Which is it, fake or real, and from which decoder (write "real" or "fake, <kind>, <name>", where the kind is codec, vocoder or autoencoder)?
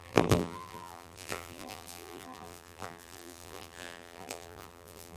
fake, vocoder, BigVGAN v2